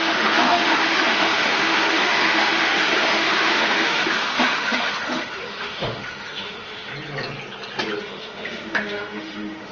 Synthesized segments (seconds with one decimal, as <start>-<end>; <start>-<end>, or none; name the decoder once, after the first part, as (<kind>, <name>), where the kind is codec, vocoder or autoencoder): 0.0-6.9 (autoencoder, DAC-VAE); 8.0-9.7